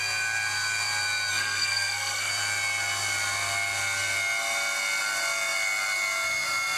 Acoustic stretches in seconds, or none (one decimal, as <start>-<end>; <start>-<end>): 0.0-1.3; 2.3-6.8